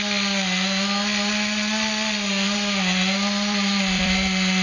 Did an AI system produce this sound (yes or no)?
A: yes